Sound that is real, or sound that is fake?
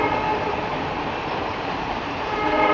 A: fake